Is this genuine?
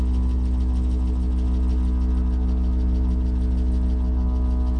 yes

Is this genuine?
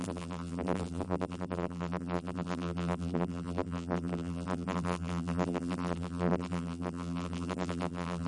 no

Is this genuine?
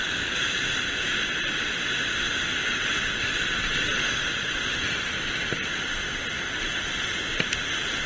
yes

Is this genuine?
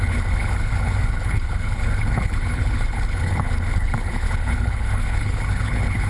no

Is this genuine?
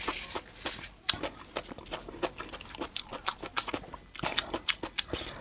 yes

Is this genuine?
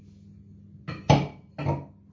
yes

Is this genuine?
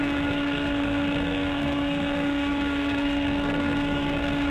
no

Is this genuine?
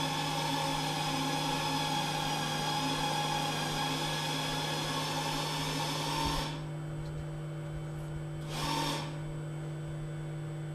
yes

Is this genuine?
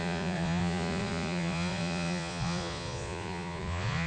no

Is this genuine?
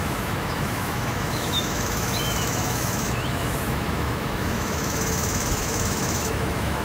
no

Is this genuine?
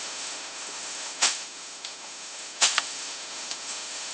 no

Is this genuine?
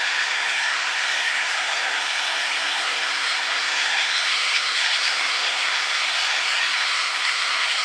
no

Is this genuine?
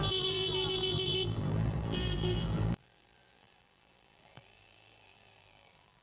no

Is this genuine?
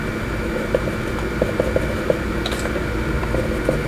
yes